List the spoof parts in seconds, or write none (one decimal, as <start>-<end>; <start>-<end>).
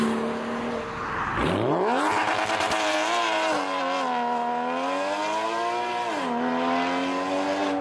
1.4-3.8